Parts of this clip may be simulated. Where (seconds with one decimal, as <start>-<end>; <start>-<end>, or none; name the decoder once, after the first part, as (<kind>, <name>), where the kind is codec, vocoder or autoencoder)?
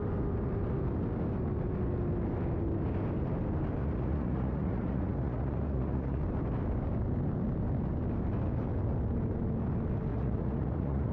3.8-6.2 (vocoder, Vocos); 10.1-11.1